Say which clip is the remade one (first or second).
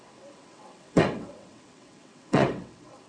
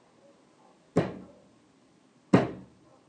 first